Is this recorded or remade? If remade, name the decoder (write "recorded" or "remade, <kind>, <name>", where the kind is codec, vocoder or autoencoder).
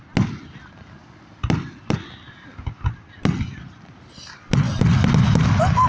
recorded